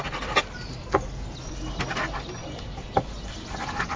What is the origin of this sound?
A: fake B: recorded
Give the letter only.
B